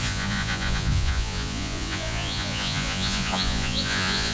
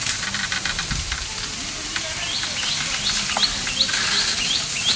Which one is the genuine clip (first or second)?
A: second